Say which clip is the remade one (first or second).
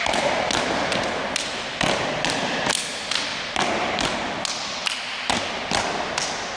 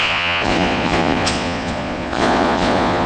second